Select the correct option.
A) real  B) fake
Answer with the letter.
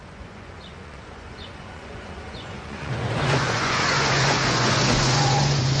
B